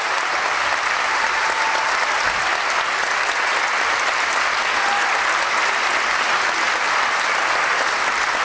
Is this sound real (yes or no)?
yes